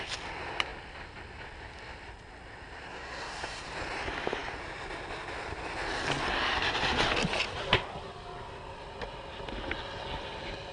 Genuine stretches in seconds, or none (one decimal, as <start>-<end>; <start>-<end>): 0.0-2.9; 3.7-10.7